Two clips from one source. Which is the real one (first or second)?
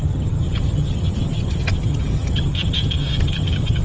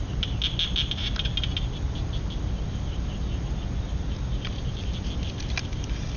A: second